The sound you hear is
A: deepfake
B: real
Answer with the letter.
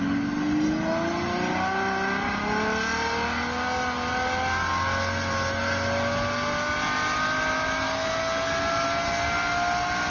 B